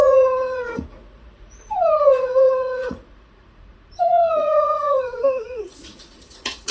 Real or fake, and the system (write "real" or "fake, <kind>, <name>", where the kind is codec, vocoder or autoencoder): fake, vocoder, Vocos